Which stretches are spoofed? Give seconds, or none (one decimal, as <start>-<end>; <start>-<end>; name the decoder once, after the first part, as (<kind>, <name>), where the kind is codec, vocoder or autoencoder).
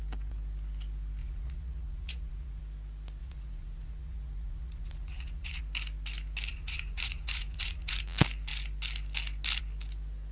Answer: 1.2-2.6 (vocoder, Vocos); 3.2-5.6; 6.5-8.0